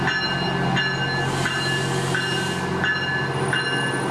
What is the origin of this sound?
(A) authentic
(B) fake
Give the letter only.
A